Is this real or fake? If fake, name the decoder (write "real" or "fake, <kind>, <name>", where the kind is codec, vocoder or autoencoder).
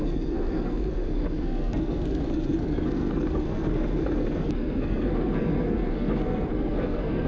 fake, codec, SNAC